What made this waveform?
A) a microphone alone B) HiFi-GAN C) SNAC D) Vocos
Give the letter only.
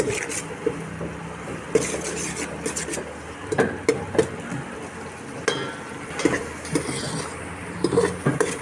A